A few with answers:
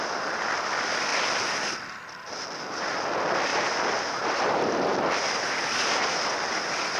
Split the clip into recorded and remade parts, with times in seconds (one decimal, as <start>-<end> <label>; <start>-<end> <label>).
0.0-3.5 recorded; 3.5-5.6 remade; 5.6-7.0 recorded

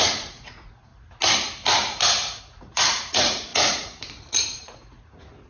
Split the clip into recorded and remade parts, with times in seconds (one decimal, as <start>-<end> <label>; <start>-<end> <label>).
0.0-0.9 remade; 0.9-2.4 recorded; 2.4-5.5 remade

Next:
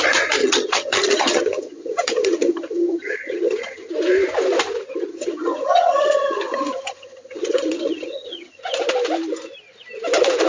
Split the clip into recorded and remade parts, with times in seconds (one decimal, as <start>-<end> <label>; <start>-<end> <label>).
0.0-0.4 recorded; 0.4-3.9 remade; 3.9-5.1 recorded; 5.1-8.6 remade; 8.6-10.5 recorded

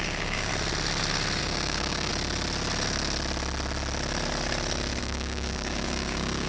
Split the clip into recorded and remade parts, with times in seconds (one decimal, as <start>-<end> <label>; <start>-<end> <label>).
0.0-0.5 remade; 0.5-1.4 recorded; 1.4-2.1 remade; 2.1-5.0 recorded; 5.0-6.5 remade

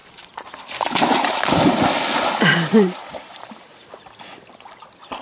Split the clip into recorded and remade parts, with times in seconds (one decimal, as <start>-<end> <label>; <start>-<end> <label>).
0.0-1.3 remade; 1.3-2.7 recorded; 2.7-3.4 remade; 3.4-5.2 recorded

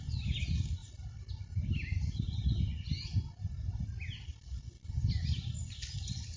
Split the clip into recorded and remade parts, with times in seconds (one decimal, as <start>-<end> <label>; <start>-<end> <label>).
0.0-6.4 recorded

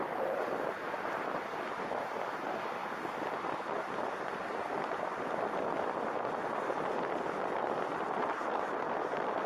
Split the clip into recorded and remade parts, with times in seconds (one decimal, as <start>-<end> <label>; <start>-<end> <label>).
0.0-9.5 recorded